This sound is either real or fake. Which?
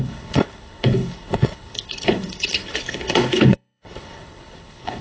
fake